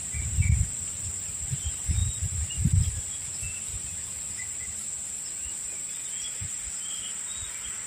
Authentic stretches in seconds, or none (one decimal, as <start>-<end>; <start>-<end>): 0.0-2.0; 2.9-3.7; 6.7-7.9